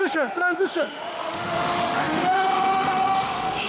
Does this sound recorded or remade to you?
remade